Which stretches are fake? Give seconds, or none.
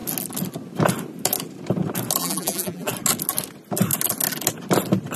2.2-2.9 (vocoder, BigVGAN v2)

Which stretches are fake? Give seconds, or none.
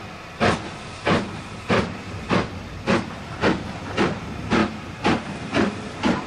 4.6-6.3 (vocoder, BigVGAN v2)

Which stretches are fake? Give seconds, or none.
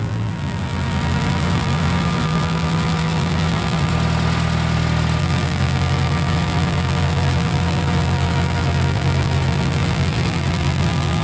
0.0-3.9 (vocoder, BigVGAN v2); 5.2-11.2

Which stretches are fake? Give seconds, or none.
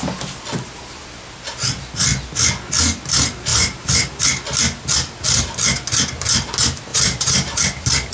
3.5-4.2 (vocoder, BigVGAN v2); 6.9-8.1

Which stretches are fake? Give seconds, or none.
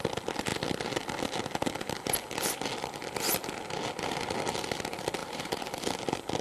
5.2-5.8 (vocoder, BigVGAN v2)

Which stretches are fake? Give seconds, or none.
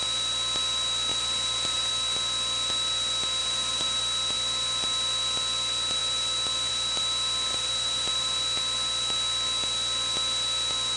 1.1-1.9 (vocoder, BigVGAN v2); 3.4-4.0; 7.5-8.4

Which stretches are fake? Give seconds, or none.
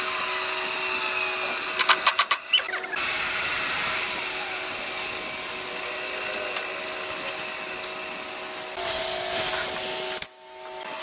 2.1-4.2 (vocoder, BigVGAN v2)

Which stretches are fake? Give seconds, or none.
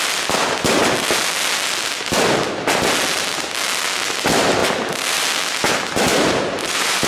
6.1-7.1 (vocoder, BigVGAN v2)